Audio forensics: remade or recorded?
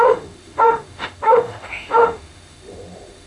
remade